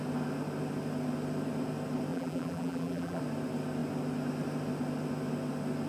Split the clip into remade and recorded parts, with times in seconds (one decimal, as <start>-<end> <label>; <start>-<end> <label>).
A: 0.0-2.1 recorded; 2.1-3.2 remade; 3.2-5.9 recorded